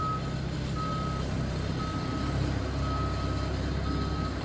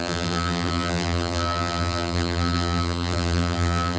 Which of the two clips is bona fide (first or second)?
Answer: first